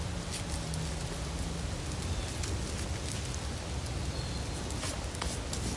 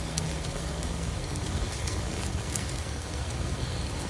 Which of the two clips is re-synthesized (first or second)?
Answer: second